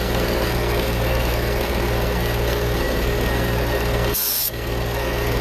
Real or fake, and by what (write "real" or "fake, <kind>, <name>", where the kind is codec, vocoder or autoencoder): fake, codec, SNAC